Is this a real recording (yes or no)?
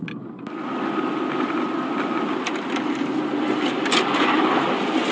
yes